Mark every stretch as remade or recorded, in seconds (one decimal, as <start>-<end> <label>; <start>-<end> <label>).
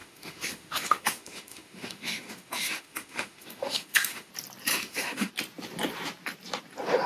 0.0-4.3 remade; 4.3-4.7 recorded; 4.7-5.3 remade; 5.3-7.1 recorded